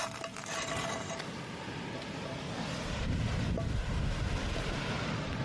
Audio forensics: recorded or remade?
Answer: recorded